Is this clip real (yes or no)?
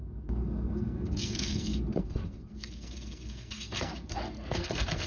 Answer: no